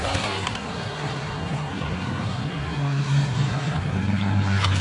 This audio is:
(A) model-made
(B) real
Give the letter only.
A